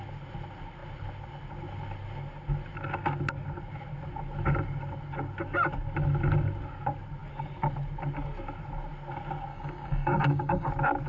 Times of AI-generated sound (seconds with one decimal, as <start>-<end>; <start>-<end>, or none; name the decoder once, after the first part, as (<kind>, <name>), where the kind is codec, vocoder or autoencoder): 9.5-10.7 (codec, DAC)